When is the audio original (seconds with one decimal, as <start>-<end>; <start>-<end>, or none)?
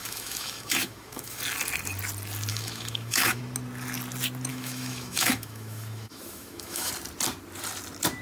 1.4-2.5; 3.4-4.5; 6.9-8.2